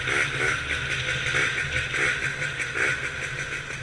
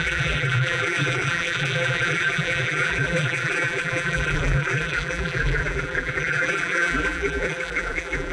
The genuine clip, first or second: first